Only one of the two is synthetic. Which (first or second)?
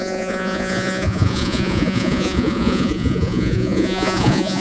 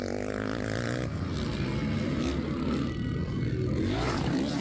first